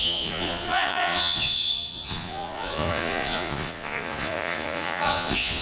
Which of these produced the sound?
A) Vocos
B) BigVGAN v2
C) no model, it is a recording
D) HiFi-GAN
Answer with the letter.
A